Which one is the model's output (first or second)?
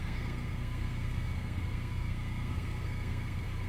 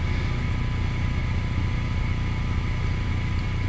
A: first